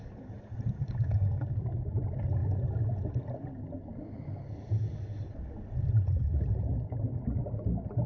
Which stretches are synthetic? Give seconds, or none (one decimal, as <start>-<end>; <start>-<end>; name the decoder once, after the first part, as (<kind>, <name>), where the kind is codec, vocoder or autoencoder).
0.8-1.9 (codec, DAC)